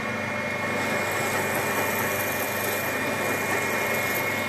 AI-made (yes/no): no